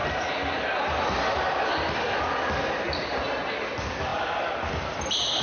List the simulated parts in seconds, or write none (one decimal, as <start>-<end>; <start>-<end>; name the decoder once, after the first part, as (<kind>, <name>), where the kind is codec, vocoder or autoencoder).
none